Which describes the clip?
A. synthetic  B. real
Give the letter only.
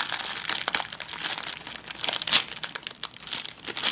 B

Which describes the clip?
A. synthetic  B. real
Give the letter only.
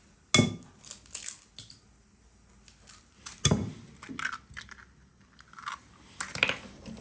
B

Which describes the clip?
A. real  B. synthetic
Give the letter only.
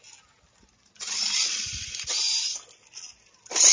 A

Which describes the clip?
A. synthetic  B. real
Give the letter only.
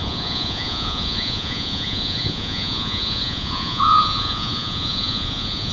A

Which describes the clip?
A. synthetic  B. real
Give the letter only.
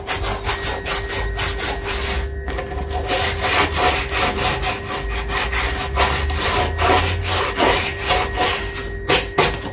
B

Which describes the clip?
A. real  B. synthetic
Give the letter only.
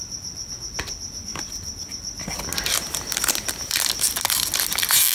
A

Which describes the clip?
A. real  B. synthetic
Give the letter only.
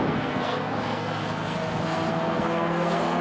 B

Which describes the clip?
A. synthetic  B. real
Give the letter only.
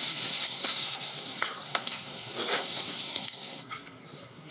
A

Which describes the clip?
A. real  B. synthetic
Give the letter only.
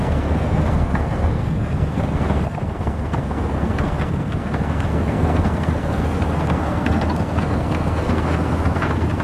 B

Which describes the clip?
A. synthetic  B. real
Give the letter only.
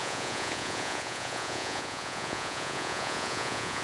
A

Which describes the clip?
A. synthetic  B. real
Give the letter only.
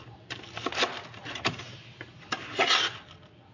B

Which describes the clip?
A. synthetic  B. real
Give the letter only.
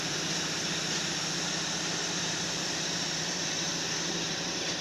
A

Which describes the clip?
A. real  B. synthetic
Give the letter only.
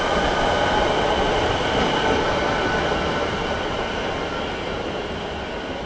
A